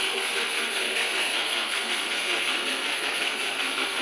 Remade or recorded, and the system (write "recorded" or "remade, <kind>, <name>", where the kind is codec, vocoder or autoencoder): remade, codec, SNAC